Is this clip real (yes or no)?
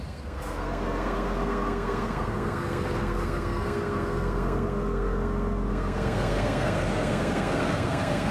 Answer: no